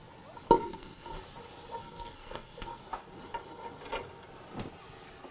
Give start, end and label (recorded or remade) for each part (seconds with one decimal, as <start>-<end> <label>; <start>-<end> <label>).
0.0-0.6 recorded; 0.6-1.2 remade; 1.2-1.8 recorded; 1.8-2.8 remade; 2.8-5.3 recorded